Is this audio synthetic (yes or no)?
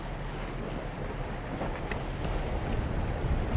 no